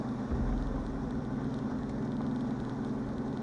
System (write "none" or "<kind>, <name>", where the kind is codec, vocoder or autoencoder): none